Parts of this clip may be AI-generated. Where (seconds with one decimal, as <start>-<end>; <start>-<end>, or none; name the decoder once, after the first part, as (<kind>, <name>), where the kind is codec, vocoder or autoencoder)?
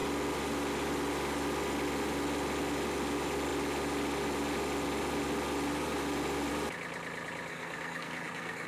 7.5-8.7 (codec, SNAC)